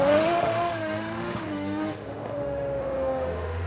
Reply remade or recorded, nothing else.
remade